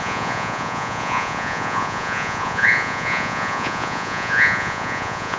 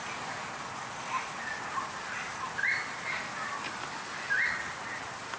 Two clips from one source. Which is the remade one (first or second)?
first